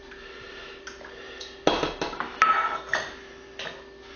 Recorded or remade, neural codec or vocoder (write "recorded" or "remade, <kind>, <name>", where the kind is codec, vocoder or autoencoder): recorded